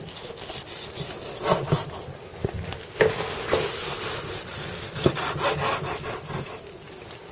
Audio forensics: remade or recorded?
recorded